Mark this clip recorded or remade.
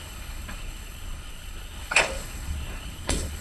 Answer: remade